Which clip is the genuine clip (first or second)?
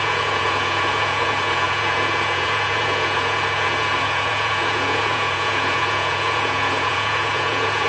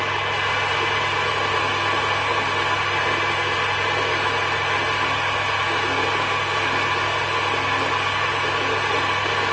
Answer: second